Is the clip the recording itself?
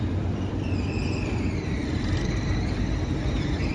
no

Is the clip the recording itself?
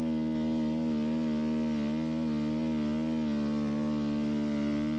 yes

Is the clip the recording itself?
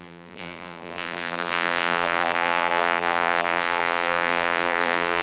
no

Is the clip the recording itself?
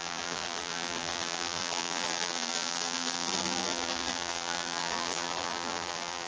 no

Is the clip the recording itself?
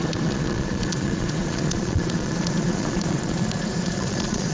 no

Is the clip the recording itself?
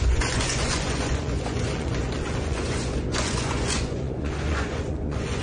no